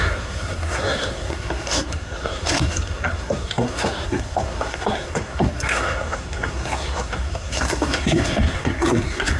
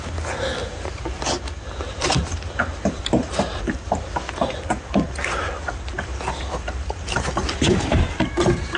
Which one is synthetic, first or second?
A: first